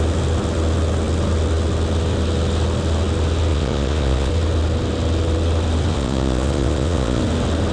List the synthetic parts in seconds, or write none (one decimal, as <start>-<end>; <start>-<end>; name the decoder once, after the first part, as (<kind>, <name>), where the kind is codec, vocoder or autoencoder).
3.5-4.3 (vocoder, Vocos); 5.9-7.2